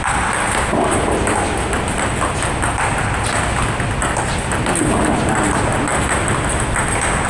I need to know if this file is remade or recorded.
recorded